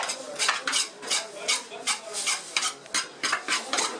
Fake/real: real